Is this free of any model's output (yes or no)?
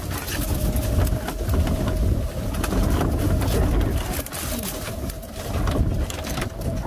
yes